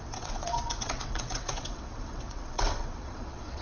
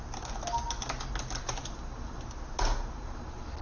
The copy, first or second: first